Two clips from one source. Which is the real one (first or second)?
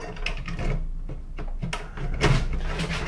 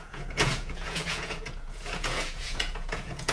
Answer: first